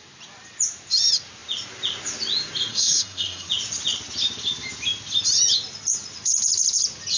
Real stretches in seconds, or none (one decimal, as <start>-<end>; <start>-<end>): 0.0-2.7; 3.5-7.2